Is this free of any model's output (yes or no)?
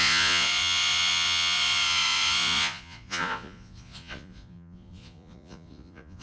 no